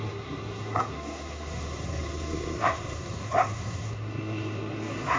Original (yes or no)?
no